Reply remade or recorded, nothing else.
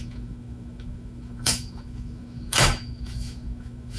remade